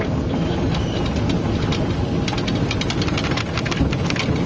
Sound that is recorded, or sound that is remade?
recorded